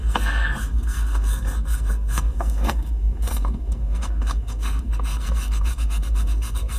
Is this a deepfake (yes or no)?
yes